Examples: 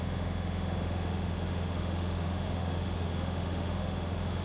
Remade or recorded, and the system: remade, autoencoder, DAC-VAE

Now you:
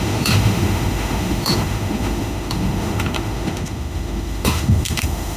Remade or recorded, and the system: remade, autoencoder, DAC-VAE